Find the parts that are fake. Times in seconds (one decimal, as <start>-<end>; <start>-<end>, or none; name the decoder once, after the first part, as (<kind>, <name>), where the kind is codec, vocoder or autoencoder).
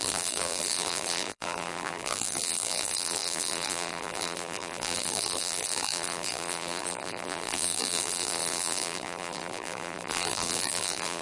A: 0.0-11.2 (vocoder, BigVGAN v2)